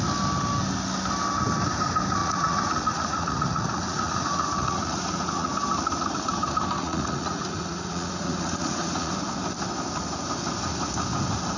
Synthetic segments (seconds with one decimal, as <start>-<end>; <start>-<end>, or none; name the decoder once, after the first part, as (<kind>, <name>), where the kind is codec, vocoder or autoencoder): 2.2-5.5 (vocoder, Vocos); 6.8-9.1

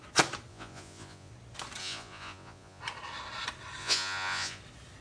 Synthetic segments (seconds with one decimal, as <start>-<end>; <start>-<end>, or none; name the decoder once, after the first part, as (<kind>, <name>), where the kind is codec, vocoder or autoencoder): 0.5-1.3 (vocoder, Vocos); 1.8-2.8; 3.8-4.6

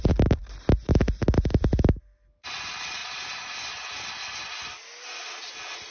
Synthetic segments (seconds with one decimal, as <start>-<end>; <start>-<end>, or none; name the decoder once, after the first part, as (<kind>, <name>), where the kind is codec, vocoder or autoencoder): none

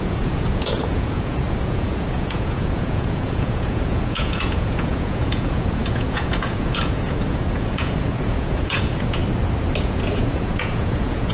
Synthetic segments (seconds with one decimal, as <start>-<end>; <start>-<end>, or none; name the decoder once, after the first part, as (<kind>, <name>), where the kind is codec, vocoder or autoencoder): 0.0-9.2 (vocoder, Vocos); 9.8-11.3